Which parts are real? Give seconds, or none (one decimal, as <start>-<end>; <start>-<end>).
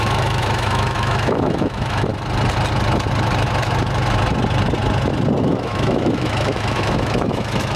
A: 2.1-5.4